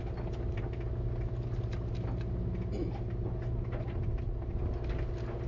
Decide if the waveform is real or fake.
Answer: real